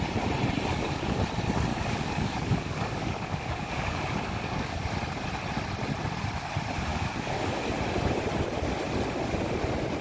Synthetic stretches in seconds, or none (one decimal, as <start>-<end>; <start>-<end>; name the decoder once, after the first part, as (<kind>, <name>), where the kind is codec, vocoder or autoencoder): 0.7-1.2 (codec, DAC); 1.7-4.9; 6.9-7.6